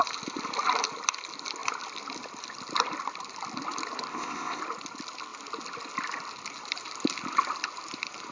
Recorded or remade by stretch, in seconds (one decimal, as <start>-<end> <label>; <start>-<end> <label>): 0.0-4.1 recorded; 4.1-4.6 remade; 4.6-8.3 recorded